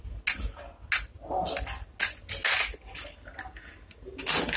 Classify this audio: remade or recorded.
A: recorded